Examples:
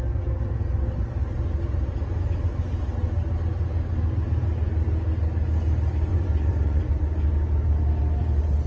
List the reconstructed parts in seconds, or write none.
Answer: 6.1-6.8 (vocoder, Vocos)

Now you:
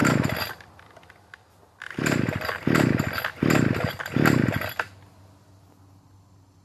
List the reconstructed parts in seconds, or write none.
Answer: none

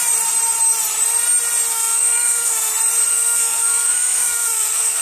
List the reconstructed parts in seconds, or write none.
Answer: 1.7-2.7 (codec, SNAC); 3.1-5.0

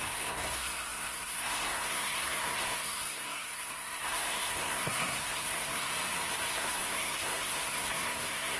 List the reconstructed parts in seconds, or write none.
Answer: 0.0-5.9 (codec, SNAC); 6.5-8.6

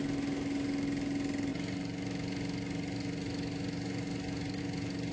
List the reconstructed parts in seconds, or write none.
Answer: none

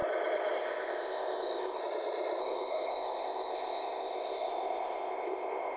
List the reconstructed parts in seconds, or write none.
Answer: 0.6-1.8 (codec, ZipCodec); 2.4-5.8

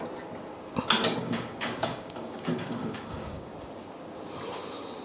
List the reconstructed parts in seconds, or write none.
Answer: 1.2-3.5 (codec, DAC)

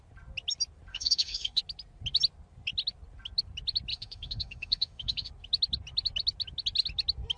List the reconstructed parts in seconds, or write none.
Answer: 0.9-1.6 (autoencoder, DAC-VAE); 3.9-5.3